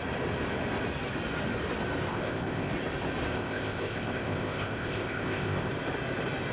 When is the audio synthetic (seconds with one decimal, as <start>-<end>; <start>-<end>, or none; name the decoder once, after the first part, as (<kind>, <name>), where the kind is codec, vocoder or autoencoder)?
2.1-2.7 (codec, ZipCodec); 3.3-5.7